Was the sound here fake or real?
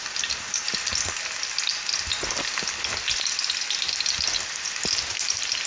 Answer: real